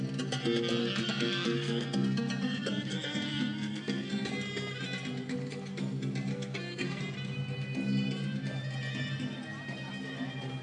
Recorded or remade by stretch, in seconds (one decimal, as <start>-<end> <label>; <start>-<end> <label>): 0.0-0.8 recorded; 0.8-4.3 remade; 4.3-6.3 recorded; 6.3-7.0 remade; 7.0-10.6 recorded